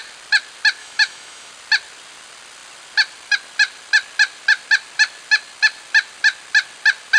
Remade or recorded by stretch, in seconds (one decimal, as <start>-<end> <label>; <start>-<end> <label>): 0.0-0.8 recorded; 0.8-1.5 remade; 1.5-7.2 recorded